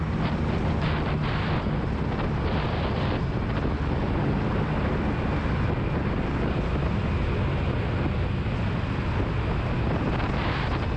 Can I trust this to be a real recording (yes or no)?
yes